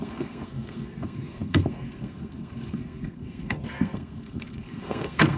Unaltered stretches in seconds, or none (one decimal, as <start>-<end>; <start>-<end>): none